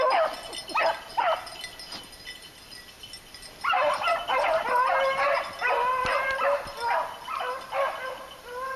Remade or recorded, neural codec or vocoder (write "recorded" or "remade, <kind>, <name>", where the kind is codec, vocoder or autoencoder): recorded